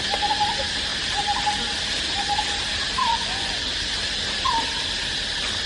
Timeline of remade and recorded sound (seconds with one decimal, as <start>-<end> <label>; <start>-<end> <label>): 0.0-3.1 recorded; 3.1-3.7 remade; 3.7-5.7 recorded

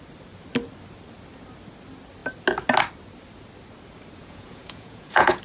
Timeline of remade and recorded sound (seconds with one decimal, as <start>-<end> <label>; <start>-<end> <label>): 0.0-4.2 recorded; 4.2-5.4 remade

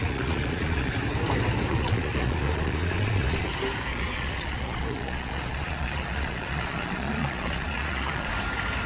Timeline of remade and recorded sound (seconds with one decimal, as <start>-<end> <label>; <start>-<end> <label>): 0.0-0.9 remade; 0.9-1.7 recorded; 1.7-3.5 remade; 3.5-3.9 recorded; 3.9-8.3 remade; 8.3-8.9 recorded

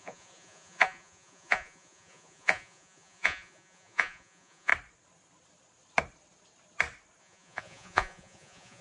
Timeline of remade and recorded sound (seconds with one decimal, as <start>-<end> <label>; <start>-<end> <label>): 0.0-4.7 remade; 4.7-7.2 recorded; 7.2-8.8 remade